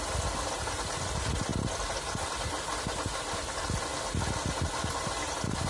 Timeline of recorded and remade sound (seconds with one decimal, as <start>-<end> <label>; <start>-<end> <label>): 0.0-5.7 recorded